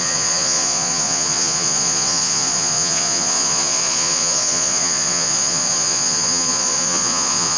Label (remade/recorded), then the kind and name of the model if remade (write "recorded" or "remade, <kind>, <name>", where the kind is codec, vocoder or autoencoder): remade, vocoder, Vocos